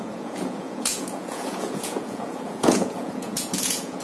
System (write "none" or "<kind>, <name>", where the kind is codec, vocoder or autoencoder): vocoder, Vocos